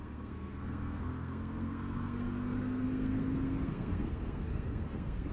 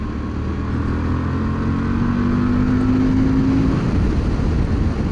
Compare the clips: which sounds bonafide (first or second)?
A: second